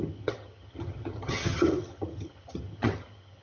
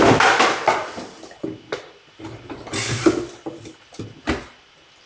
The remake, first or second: first